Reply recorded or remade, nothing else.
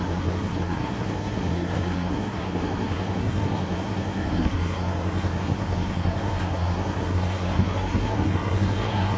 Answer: remade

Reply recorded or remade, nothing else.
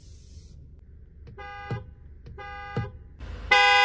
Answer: recorded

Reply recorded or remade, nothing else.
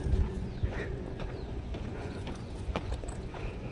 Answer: remade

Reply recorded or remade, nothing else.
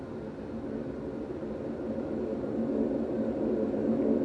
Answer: recorded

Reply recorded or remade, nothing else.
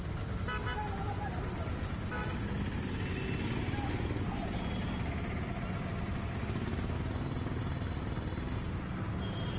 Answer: recorded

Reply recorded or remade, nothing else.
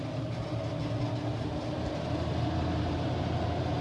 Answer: recorded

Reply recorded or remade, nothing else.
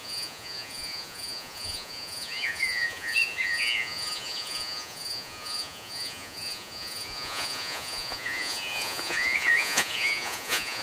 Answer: remade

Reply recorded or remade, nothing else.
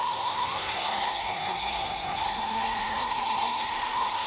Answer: remade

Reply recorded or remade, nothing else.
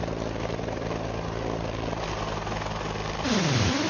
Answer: recorded